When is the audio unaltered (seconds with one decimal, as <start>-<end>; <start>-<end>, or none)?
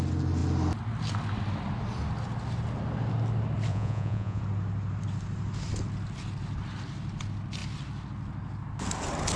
0.0-3.7; 4.4-9.4